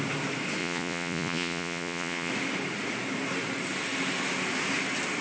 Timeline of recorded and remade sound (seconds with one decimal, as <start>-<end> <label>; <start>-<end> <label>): 0.0-0.6 recorded; 0.6-2.3 remade; 2.3-5.2 recorded